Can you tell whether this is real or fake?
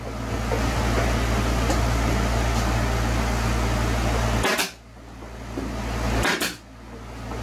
real